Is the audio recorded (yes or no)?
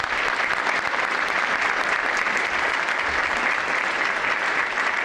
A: no